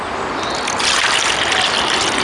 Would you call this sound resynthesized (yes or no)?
no